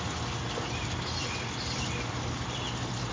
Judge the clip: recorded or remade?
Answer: recorded